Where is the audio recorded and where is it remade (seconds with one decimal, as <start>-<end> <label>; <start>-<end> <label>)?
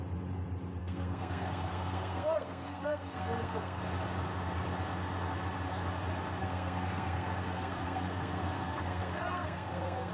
0.0-0.8 recorded; 0.8-3.8 remade; 3.8-6.4 recorded; 6.4-10.1 remade